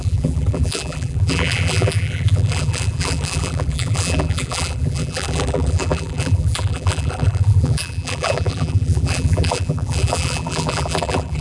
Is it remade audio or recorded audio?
remade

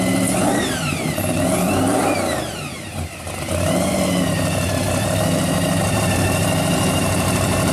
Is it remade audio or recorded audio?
remade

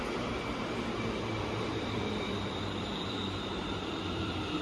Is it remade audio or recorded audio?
remade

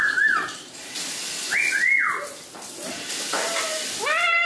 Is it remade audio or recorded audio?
recorded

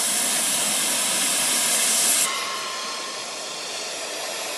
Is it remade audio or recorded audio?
recorded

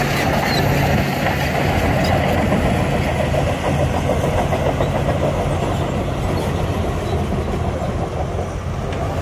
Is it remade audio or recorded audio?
recorded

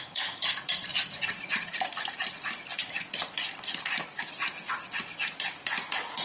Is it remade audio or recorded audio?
remade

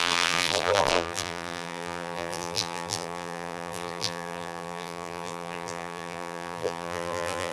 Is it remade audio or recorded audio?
remade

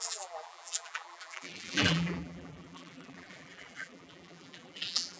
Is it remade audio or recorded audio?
remade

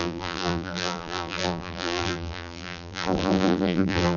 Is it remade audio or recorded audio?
remade